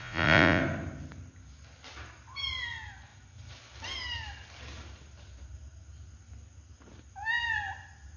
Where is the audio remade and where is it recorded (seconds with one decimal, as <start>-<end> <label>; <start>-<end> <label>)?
0.0-0.6 remade; 0.6-8.2 recorded